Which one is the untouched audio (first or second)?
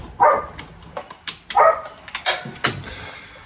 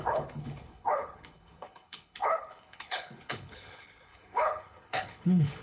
first